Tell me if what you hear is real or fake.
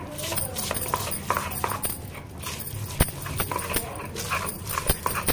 real